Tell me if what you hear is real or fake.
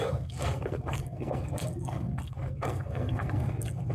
fake